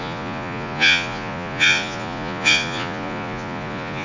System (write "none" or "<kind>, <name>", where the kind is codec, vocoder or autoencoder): vocoder, Vocos